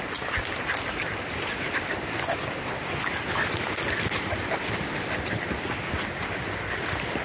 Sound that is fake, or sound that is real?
real